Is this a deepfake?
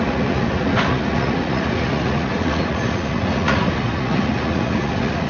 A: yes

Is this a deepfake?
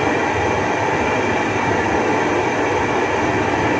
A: no